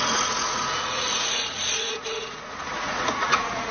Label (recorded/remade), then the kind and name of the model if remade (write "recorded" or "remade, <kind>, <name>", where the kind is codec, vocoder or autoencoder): remade, vocoder, Vocos